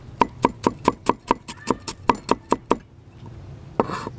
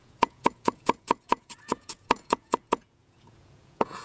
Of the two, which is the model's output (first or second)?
second